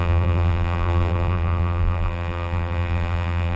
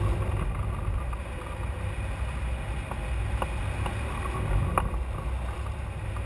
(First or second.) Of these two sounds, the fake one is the first